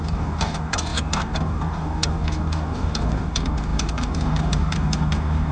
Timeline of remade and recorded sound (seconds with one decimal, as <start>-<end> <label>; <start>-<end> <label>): 0.0-5.5 remade

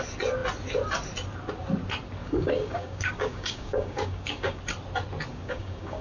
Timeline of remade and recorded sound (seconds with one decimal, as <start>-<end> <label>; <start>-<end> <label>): 0.0-2.2 recorded; 2.2-4.6 remade; 4.6-5.3 recorded; 5.3-6.0 remade

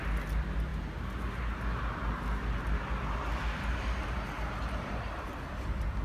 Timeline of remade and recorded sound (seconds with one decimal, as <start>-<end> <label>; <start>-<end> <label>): 0.0-6.0 recorded

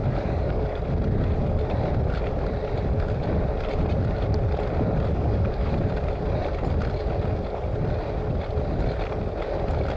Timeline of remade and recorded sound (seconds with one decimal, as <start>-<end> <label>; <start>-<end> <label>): 0.0-0.8 remade; 0.8-5.1 recorded; 5.1-5.7 remade; 5.7-10.0 recorded

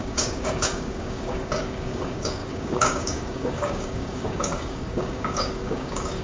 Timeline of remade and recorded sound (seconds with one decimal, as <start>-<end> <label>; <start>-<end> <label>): 0.0-6.2 remade

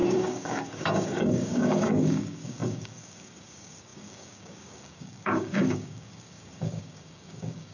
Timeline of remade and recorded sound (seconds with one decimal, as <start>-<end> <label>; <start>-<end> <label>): 0.0-7.7 remade

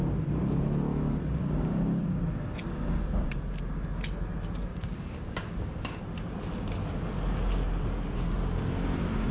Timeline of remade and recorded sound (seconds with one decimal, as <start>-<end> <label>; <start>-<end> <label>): 0.0-1.4 recorded; 1.4-2.1 remade; 2.1-2.6 recorded; 2.6-3.3 remade; 3.3-4.7 recorded; 4.7-6.0 remade; 6.0-9.3 recorded

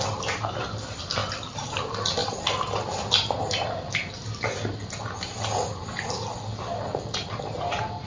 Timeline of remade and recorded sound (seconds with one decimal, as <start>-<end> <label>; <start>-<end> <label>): 0.0-8.1 recorded